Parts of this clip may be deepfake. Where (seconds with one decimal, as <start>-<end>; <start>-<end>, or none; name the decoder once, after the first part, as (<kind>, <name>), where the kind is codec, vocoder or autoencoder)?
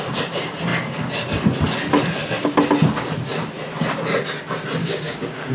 4.8-5.5 (codec, DAC)